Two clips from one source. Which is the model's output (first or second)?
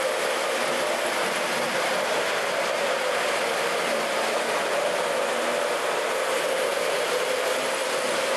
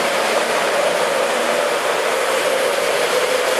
second